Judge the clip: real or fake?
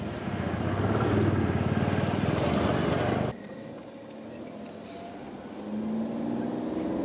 real